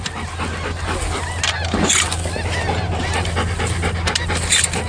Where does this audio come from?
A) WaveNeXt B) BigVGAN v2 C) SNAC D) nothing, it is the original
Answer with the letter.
D